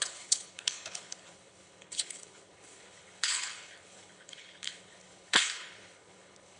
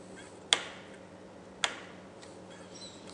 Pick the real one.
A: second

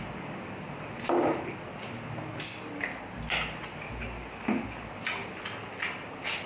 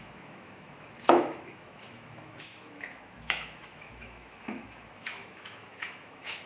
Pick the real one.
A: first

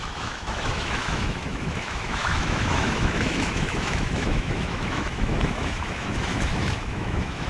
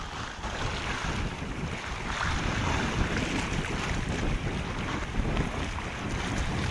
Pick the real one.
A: second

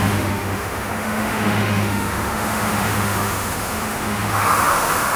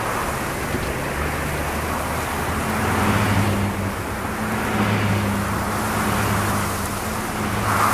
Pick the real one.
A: second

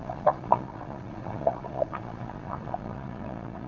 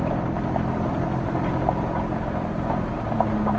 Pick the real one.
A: second